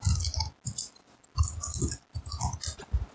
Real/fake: real